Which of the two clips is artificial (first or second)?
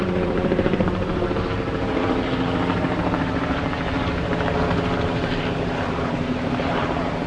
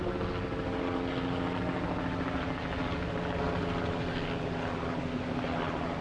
first